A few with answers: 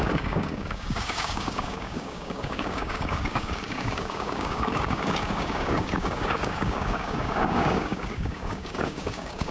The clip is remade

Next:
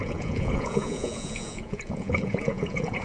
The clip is remade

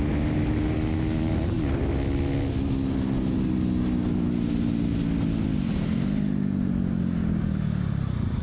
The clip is recorded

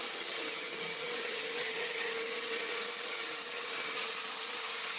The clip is remade